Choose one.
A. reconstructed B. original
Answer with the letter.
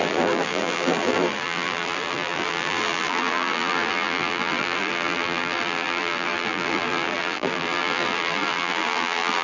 A